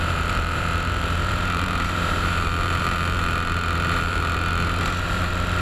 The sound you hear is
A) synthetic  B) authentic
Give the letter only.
A